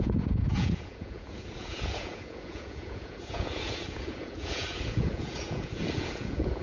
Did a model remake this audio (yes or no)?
yes